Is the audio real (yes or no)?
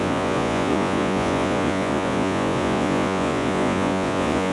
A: no